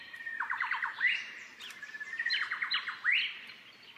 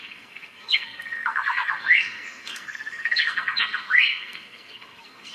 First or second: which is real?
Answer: first